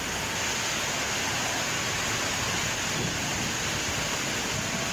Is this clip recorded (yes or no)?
yes